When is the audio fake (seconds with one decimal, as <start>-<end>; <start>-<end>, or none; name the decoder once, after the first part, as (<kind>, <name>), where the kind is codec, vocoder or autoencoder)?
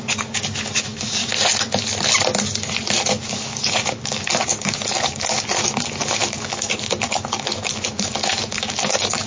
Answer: 0.0-1.2 (codec, DAC); 3.1-9.3